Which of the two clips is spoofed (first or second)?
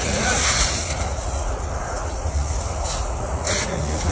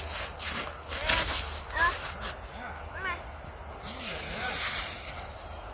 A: first